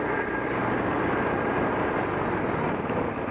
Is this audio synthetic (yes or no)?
no